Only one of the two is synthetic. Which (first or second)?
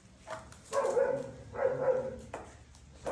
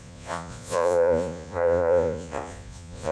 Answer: second